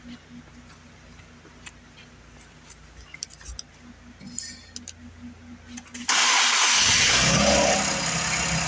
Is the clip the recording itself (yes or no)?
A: yes